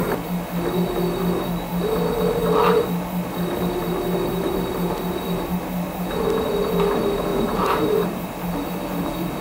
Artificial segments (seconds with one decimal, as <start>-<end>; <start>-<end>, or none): 7.3-8.2